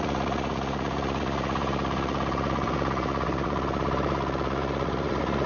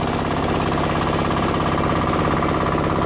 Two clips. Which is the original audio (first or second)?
second